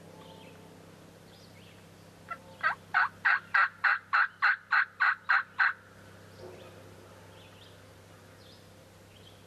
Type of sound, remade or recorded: recorded